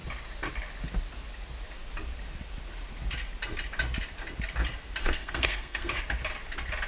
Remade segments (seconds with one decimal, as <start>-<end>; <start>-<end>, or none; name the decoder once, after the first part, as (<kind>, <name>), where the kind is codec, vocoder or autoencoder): 5.0-6.0 (codec, SNAC)